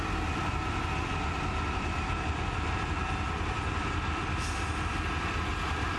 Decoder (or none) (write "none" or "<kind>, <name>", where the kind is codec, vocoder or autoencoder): none